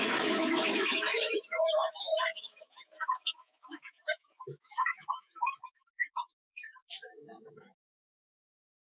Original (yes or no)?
no